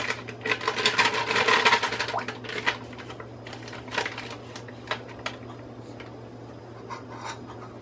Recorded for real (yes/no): yes